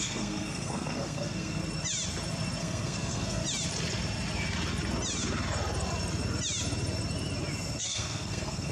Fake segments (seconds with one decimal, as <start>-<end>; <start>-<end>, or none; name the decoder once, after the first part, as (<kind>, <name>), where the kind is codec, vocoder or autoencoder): 0.0-1.6 (codec, SNAC); 2.6-3.4; 7.8-8.7

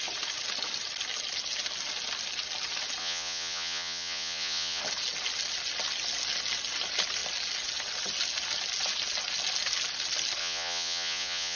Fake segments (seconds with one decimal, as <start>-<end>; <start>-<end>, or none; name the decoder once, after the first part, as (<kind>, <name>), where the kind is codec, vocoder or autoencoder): 3.0-4.8 (vocoder, Vocos); 10.4-11.6

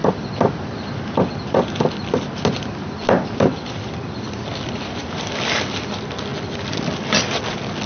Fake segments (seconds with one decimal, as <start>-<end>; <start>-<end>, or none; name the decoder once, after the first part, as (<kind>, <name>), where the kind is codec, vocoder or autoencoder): 4.5-5.4 (vocoder, BigVGAN v2); 6.3-7.4

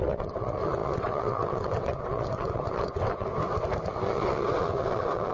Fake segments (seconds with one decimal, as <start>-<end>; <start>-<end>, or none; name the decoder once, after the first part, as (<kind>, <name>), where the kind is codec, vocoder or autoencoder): 0.0-3.3 (vocoder, WaveNeXt); 3.9-5.3

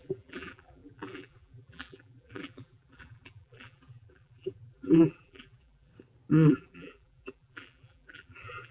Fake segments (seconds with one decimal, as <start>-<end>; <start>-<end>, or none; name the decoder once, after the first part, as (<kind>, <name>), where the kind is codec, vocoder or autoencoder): 0.0-5.9 (vocoder, BigVGAN v2); 6.5-8.7

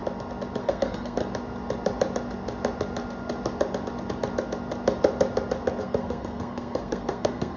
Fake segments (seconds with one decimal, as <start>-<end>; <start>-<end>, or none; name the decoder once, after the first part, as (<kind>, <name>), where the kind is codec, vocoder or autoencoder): 0.6-1.2 (codec, SNAC); 5.8-7.6